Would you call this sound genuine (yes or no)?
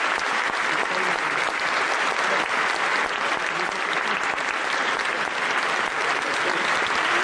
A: yes